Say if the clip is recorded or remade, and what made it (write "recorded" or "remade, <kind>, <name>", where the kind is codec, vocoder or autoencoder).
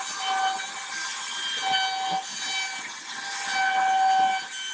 recorded